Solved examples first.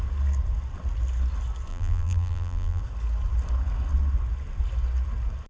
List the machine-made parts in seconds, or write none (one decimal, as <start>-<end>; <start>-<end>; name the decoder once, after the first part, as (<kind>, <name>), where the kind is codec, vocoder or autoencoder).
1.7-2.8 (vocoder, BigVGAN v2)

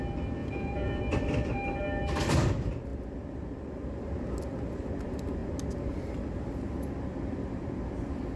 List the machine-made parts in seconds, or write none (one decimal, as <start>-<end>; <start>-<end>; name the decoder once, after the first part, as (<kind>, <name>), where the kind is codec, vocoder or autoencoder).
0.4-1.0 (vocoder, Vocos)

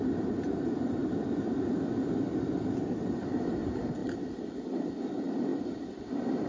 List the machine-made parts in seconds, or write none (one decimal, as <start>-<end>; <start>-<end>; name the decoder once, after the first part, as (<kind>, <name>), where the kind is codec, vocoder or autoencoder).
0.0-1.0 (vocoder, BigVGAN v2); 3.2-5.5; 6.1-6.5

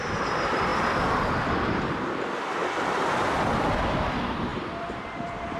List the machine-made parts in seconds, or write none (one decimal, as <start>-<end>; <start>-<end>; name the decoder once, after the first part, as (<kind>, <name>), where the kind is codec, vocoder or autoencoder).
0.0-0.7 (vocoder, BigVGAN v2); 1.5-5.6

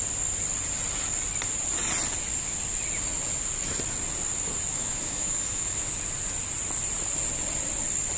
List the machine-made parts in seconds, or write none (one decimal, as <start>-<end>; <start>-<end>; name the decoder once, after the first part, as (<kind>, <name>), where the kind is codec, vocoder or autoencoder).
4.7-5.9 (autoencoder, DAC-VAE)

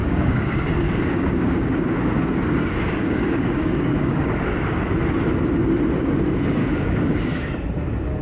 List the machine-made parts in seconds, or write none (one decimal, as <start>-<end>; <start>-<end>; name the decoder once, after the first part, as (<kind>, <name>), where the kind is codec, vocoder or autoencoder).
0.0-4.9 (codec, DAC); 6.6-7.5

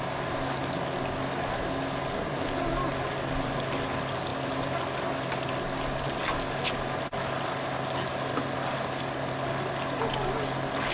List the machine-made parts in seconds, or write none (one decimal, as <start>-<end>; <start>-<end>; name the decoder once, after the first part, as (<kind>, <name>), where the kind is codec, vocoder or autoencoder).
none

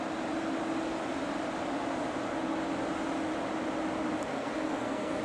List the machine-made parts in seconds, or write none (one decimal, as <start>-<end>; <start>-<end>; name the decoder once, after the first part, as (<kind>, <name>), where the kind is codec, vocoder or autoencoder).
4.3-5.2 (codec, SNAC)